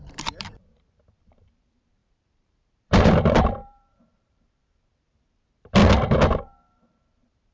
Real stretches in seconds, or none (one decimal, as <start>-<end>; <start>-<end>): 5.8-6.4